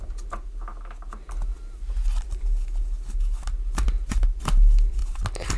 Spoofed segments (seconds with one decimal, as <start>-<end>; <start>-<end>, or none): 0.0-0.7; 4.1-5.0

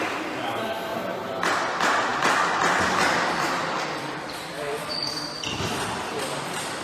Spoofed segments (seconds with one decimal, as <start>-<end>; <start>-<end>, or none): 0.9-1.6; 2.1-5.5

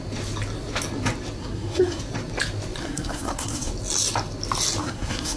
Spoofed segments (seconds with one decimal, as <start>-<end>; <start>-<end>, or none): 1.4-2.0; 2.8-3.7; 4.8-5.4

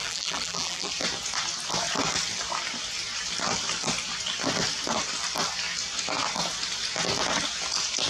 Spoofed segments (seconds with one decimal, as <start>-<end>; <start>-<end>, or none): 0.0-0.9

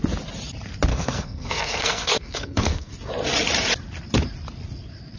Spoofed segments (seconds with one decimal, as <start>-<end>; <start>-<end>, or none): 0.9-2.9